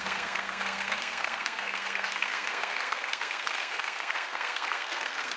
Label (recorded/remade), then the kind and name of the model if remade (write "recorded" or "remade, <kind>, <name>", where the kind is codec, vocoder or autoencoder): remade, codec, SNAC